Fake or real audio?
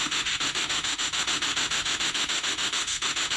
fake